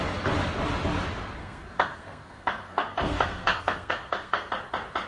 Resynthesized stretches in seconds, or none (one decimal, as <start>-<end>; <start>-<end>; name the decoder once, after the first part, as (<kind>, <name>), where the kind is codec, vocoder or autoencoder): 1.4-4.5 (codec, SNAC)